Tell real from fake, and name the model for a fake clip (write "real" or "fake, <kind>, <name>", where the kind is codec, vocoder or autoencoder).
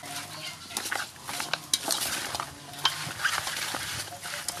real